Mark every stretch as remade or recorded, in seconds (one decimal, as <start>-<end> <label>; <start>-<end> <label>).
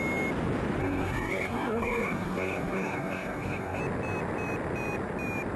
0.0-0.8 recorded; 0.8-3.8 remade; 3.8-5.6 recorded